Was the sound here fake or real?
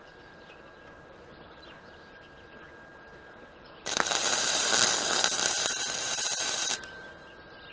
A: fake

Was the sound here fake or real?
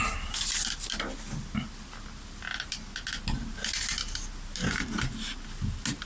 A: real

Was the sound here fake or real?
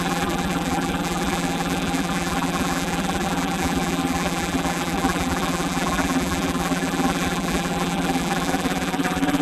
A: fake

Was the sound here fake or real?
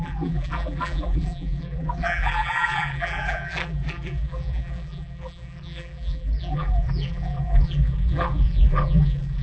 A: fake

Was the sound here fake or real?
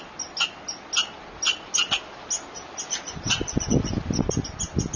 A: real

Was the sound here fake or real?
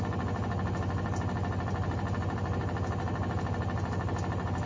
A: real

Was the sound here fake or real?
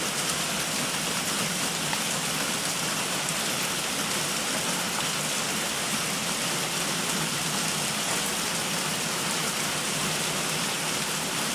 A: fake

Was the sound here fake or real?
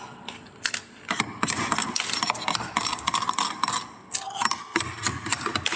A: real